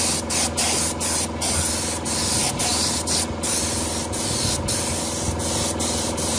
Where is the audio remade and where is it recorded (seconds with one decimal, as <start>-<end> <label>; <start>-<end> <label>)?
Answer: 0.0-6.4 recorded